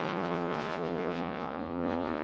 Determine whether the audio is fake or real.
fake